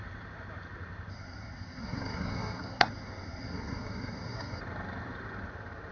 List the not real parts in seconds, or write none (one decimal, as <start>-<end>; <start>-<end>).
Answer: 1.1-4.6